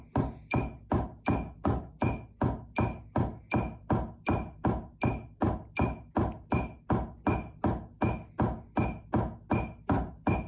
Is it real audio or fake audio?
real